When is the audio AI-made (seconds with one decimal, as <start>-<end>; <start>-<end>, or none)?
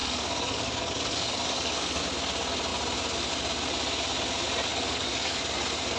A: 0.0-2.0; 4.7-5.4